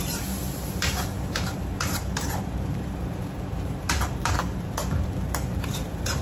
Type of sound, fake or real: fake